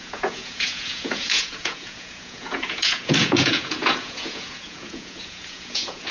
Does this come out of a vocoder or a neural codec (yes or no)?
yes